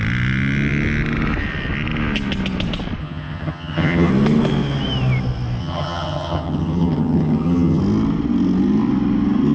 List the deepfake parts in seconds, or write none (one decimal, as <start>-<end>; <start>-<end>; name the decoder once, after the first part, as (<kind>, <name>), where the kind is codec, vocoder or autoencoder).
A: 3.0-4.1 (vocoder, HiFi-GAN); 5.6-7.8